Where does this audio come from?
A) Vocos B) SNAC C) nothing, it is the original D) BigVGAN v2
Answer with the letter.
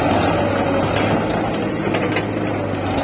C